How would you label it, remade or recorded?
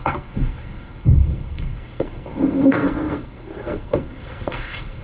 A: remade